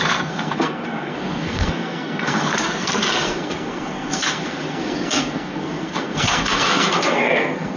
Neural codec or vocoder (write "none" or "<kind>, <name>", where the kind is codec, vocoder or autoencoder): codec, SNAC